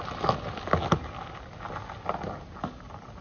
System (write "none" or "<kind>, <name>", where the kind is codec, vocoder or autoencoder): none